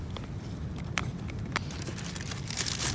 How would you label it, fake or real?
real